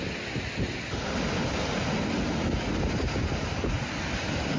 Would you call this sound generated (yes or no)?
no